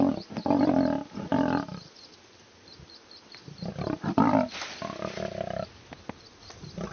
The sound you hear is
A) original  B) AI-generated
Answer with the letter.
A